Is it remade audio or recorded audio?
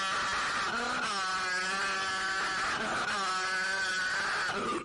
recorded